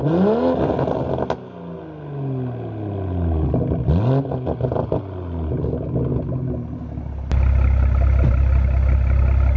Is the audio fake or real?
real